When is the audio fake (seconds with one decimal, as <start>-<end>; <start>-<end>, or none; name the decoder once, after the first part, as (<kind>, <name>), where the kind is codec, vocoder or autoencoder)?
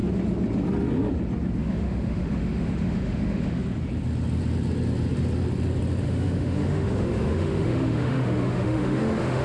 1.6-3.8 (autoencoder, DAC-VAE); 6.0-9.4